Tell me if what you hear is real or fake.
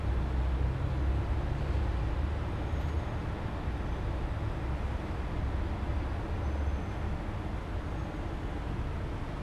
real